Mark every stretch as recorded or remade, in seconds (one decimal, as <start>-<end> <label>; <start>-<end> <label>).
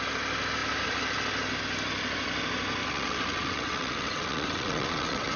0.0-2.8 recorded; 2.8-5.4 remade